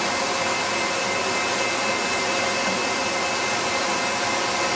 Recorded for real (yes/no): yes